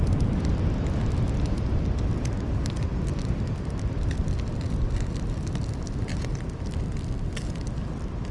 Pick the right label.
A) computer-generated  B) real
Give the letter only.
B